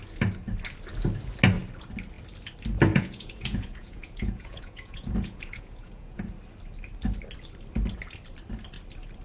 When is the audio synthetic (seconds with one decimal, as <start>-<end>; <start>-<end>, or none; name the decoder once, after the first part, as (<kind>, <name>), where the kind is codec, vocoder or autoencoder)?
2.9-6.2 (vocoder, Vocos)